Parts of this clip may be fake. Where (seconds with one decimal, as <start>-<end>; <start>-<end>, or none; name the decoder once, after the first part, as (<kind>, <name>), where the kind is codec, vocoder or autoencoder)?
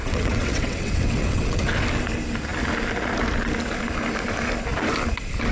0.0-1.8 (vocoder, WaveNeXt)